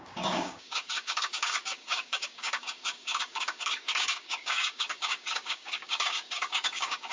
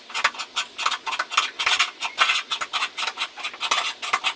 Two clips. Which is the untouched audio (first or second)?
second